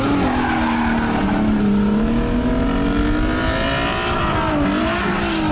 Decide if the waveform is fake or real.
real